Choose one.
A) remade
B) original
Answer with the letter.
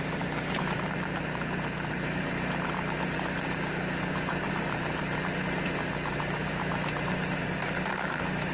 B